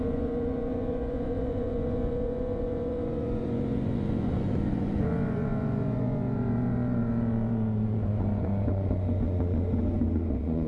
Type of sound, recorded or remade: remade